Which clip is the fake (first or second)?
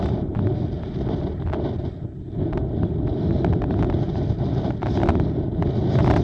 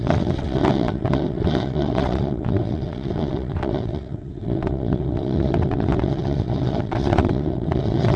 second